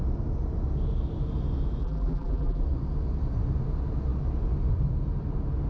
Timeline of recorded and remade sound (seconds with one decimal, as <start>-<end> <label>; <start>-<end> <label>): 0.0-1.8 recorded; 1.8-2.6 remade; 2.6-5.7 recorded